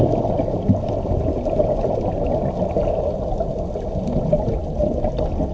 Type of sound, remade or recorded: recorded